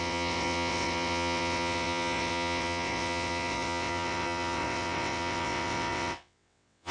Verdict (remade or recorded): remade